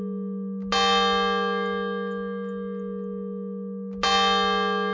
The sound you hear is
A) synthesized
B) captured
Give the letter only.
B